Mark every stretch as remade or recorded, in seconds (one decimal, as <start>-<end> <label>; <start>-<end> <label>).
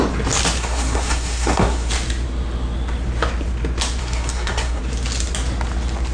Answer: 0.0-0.6 recorded; 0.6-1.9 remade; 1.9-4.0 recorded; 4.0-4.8 remade; 4.8-6.1 recorded